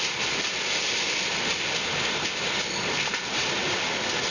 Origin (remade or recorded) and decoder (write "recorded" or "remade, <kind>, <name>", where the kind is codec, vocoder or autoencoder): recorded